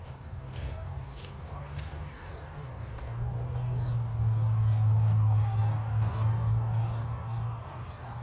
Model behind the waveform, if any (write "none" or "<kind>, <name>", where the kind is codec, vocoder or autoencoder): codec, DAC